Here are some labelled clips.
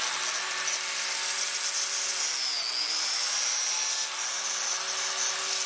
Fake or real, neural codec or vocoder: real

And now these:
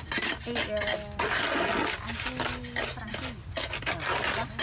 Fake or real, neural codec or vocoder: real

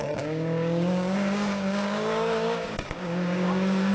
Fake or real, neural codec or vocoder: fake, codec, DAC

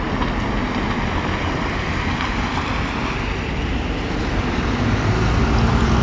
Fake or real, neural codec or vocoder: real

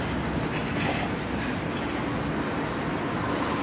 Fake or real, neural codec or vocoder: real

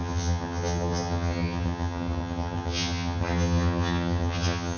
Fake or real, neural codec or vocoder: fake, vocoder, HiFi-GAN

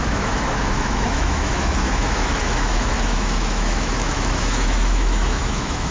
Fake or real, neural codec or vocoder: fake, autoencoder, DAC-VAE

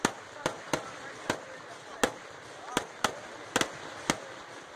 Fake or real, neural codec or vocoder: real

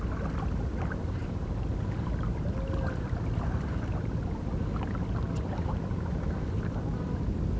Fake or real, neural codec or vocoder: real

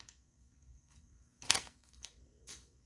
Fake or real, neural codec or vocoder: fake, codec, SNAC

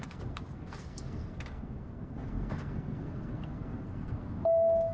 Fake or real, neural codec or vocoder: fake, codec, SNAC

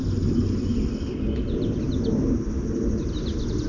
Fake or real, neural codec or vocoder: real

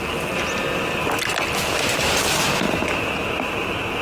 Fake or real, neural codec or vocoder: real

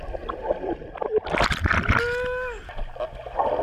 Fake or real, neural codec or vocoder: real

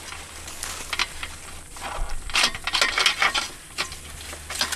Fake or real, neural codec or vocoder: real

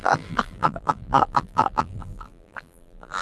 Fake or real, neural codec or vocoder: fake, vocoder, BigVGAN v2